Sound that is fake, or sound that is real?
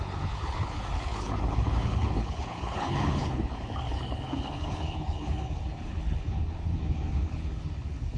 fake